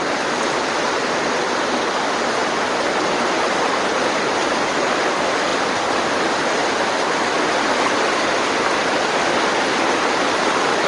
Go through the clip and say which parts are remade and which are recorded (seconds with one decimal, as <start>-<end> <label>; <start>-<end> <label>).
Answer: 0.0-10.9 recorded